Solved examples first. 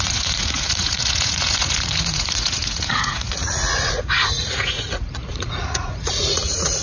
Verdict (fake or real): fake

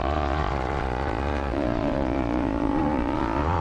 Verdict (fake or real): fake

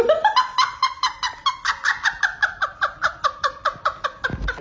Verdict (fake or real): real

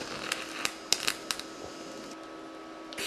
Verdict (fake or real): real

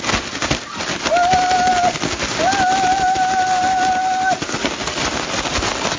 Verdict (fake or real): real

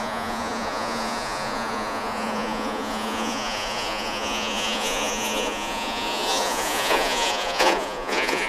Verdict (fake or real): fake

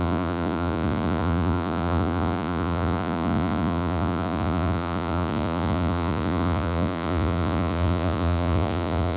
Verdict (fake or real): fake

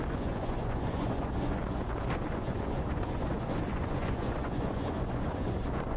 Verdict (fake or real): fake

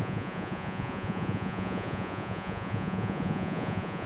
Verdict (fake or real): fake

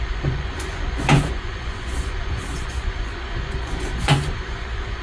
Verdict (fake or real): fake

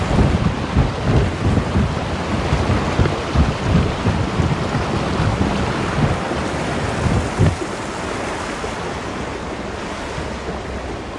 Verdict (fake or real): real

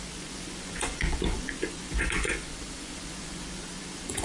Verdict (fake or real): fake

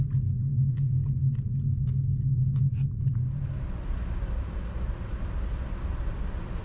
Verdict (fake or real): real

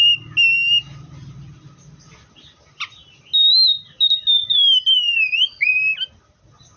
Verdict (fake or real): real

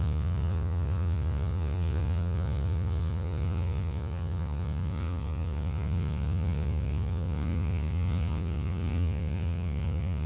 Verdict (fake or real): fake